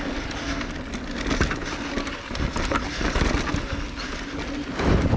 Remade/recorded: recorded